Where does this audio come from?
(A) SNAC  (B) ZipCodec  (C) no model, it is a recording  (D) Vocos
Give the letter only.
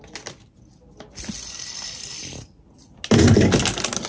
C